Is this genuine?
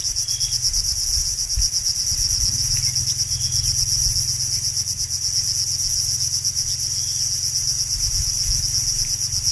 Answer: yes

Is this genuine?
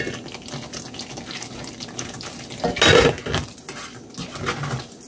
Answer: yes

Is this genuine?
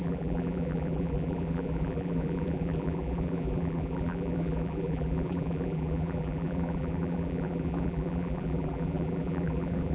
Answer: no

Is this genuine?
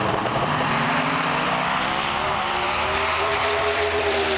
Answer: no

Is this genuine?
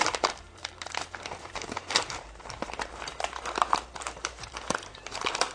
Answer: no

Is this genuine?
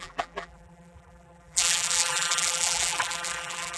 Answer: no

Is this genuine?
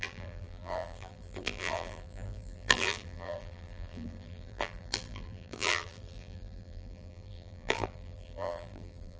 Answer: no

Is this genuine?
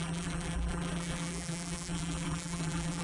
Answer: no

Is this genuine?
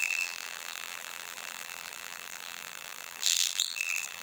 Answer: no